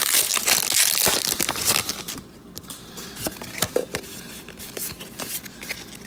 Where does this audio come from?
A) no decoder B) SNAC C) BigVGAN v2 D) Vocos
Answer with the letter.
A